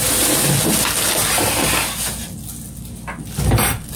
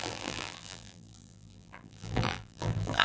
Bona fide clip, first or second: first